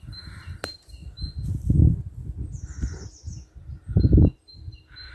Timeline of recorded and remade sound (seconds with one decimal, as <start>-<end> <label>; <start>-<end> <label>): 0.0-5.1 recorded